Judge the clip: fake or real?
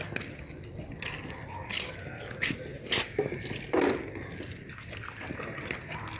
real